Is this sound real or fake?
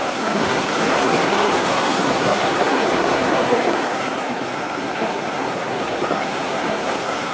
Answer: fake